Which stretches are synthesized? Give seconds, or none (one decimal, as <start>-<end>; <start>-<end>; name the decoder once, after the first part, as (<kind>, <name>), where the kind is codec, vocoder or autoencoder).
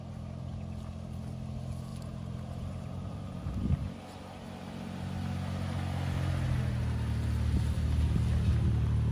1.9-3.4 (vocoder, BigVGAN v2)